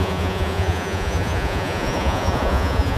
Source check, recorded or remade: remade